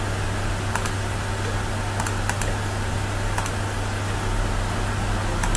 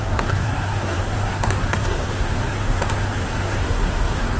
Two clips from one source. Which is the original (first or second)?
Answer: first